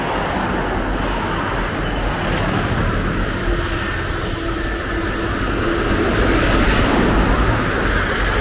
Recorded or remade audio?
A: recorded